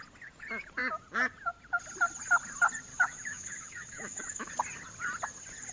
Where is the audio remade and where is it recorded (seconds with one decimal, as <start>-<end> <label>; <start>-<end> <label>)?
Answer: 0.0-2.9 recorded; 2.9-4.5 remade; 4.5-5.7 recorded